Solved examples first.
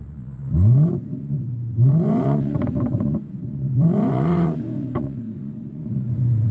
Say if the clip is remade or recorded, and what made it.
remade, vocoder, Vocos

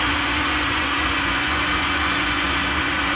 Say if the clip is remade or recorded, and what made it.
remade, vocoder, Vocos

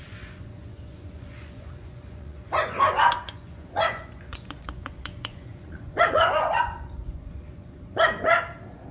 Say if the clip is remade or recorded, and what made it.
remade, vocoder, Vocos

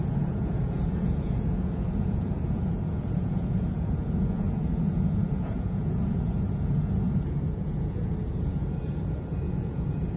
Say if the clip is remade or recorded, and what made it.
remade, vocoder, Vocos